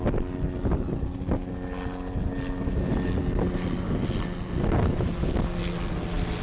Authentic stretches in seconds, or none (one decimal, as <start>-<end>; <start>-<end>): 0.0-6.4